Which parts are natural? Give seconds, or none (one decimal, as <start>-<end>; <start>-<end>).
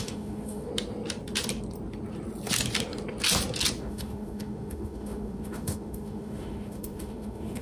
0.7-3.8